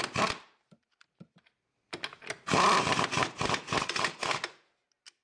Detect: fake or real real